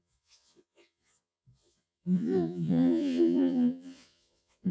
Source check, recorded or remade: remade